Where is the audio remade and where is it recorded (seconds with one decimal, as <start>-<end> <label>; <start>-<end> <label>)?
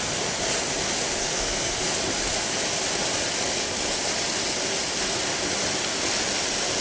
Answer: 0.0-1.2 recorded; 1.2-1.8 remade; 1.8-6.8 recorded